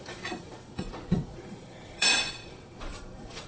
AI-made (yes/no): yes